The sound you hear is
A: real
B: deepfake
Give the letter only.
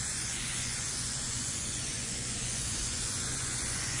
B